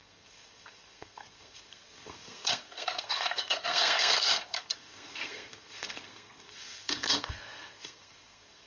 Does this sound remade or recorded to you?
remade